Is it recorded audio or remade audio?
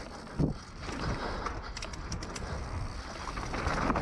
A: recorded